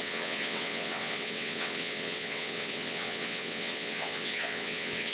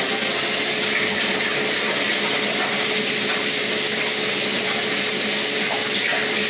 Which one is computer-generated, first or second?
first